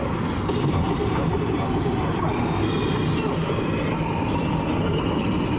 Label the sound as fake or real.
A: real